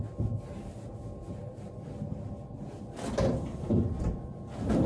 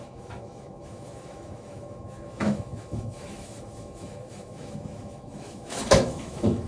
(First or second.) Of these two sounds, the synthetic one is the second